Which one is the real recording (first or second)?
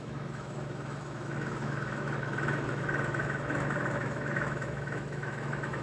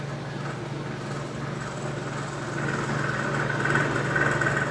second